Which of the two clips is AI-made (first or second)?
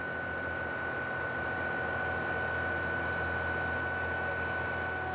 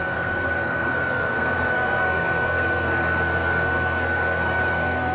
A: second